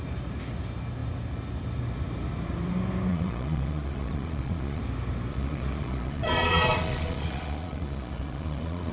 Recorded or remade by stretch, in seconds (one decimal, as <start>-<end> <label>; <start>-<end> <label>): 0.0-3.1 recorded; 3.1-4.8 remade; 4.8-5.3 recorded; 5.3-8.9 remade